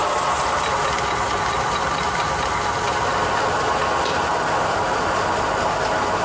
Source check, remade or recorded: recorded